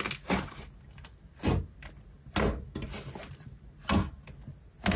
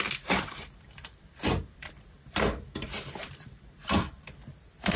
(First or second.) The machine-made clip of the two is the second